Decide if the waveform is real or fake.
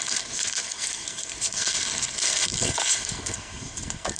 fake